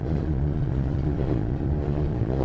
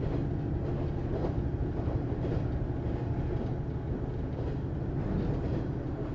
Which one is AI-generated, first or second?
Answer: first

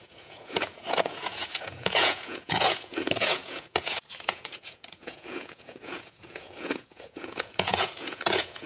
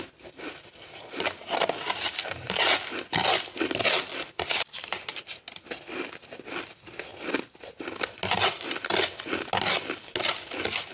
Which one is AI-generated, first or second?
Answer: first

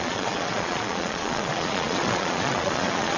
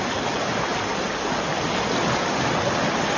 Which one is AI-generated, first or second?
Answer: first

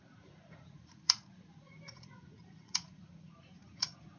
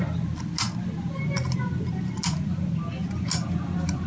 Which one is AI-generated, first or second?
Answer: first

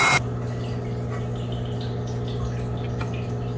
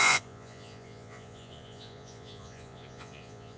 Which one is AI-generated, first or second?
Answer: second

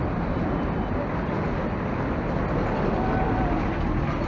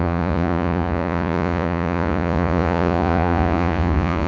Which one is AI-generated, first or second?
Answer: second